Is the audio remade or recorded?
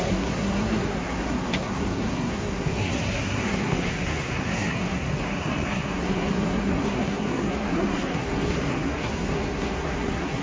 remade